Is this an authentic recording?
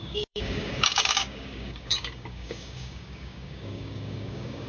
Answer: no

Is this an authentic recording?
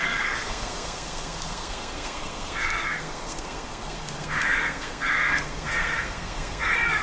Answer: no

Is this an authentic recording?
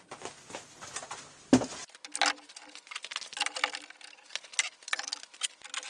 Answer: yes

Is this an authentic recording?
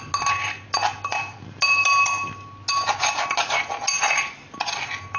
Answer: yes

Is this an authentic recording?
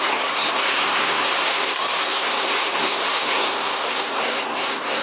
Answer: no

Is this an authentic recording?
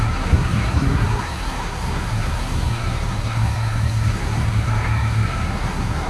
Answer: no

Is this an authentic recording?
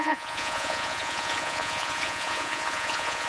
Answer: no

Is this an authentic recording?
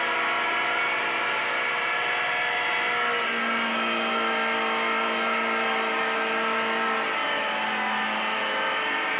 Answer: yes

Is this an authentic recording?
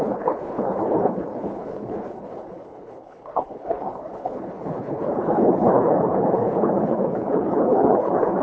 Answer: no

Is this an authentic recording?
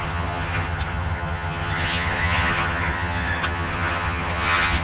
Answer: no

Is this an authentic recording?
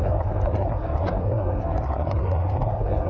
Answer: no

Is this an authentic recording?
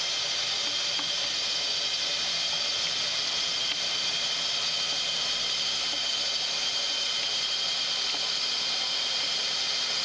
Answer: yes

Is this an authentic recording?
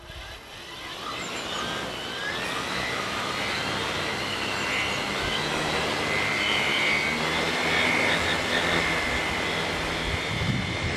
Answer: yes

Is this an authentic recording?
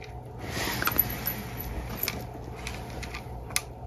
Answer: yes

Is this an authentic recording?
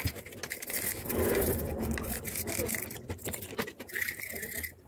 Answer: yes